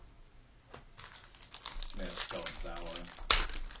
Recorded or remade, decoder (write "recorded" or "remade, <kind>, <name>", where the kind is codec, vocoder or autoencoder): recorded